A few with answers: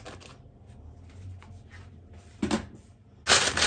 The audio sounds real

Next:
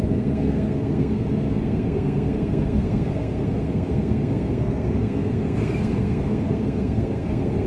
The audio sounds fake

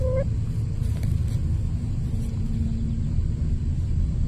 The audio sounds real